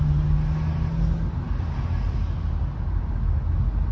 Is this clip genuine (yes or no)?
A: yes